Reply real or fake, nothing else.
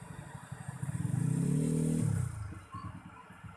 real